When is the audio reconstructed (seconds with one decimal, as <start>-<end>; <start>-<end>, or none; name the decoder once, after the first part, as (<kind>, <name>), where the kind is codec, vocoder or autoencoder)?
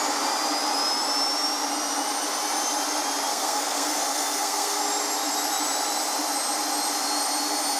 3.3-4.8 (codec, SNAC)